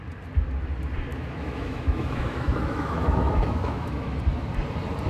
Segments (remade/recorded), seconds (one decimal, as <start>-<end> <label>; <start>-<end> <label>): 0.0-1.1 recorded; 1.1-4.2 remade; 4.2-5.1 recorded